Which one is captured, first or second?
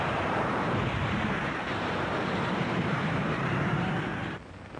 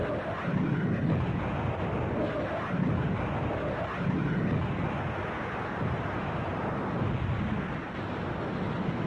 second